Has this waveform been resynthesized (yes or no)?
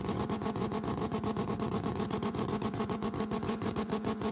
yes